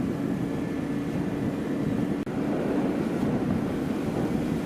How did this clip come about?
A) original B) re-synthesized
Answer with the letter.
A